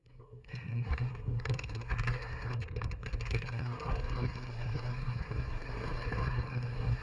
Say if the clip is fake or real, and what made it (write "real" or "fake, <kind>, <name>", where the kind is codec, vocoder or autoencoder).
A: fake, codec, SNAC